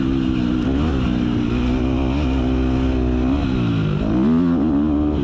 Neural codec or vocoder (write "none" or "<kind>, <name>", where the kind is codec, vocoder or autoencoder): none